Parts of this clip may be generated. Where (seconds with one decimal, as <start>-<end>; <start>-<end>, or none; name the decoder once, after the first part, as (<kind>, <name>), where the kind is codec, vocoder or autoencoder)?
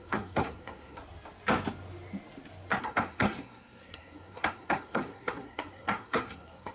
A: 0.0-1.0 (codec, SNAC); 2.8-6.7